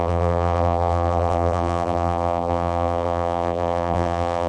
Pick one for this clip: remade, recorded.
remade